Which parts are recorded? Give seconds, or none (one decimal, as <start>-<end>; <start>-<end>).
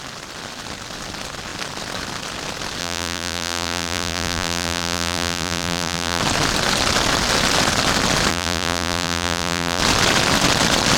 0.0-2.8; 6.2-8.3; 9.8-11.0